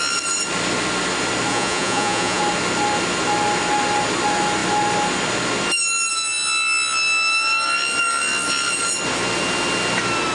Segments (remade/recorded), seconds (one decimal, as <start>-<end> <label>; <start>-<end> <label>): 0.0-1.5 recorded; 1.5-2.4 remade; 2.4-10.3 recorded